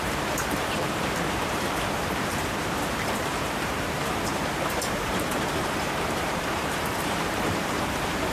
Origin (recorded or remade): remade